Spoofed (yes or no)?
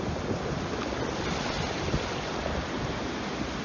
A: no